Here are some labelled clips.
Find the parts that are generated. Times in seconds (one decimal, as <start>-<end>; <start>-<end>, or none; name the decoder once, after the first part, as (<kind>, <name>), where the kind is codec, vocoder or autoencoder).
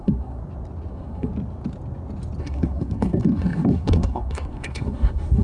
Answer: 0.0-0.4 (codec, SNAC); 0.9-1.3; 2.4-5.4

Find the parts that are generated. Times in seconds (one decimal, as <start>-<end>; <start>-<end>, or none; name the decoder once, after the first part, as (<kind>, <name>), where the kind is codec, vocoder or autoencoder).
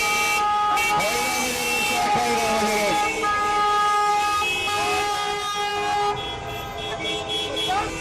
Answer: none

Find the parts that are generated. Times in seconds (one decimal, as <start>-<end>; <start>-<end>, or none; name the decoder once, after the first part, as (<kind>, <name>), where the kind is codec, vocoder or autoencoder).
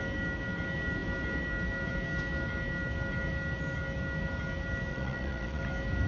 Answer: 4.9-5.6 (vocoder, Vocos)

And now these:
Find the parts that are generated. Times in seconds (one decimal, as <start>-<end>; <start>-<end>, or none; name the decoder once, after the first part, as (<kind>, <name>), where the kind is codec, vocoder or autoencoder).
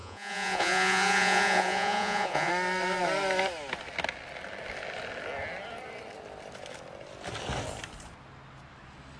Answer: 0.0-2.5 (vocoder, Vocos)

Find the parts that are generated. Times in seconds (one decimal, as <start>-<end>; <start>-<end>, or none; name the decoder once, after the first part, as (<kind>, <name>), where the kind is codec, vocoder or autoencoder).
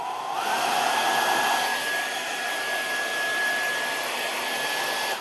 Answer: none